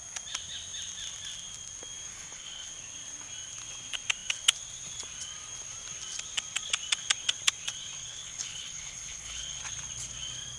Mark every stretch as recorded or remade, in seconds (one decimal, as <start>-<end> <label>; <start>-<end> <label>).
0.0-2.1 recorded; 2.1-2.7 remade; 2.7-8.0 recorded; 8.0-9.6 remade; 9.6-10.6 recorded